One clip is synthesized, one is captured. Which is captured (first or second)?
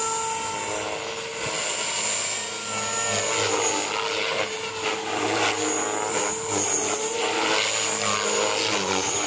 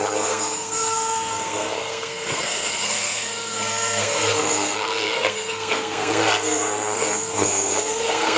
first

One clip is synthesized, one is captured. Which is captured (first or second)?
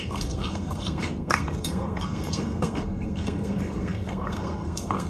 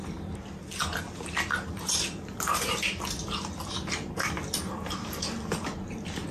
second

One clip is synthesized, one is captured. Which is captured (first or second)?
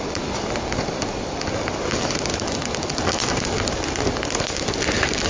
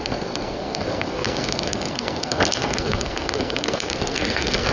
first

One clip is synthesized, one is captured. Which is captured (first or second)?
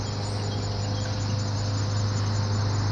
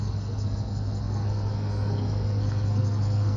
first